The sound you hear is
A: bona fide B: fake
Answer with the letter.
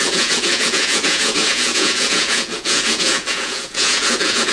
B